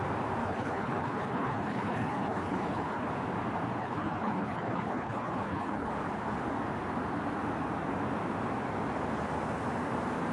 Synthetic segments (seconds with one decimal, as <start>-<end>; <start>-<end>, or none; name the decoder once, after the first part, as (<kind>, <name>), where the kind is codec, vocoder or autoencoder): 0.4-3.1 (codec, HILCodec); 3.8-5.9